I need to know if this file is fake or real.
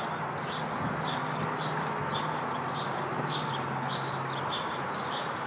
real